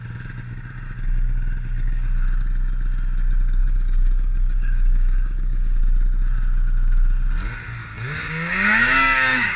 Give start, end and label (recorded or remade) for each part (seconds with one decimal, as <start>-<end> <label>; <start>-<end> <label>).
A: 0.0-3.6 recorded; 3.6-5.8 remade; 5.8-7.8 recorded; 7.8-9.6 remade